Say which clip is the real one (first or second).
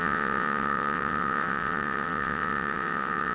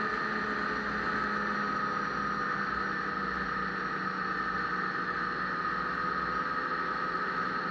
second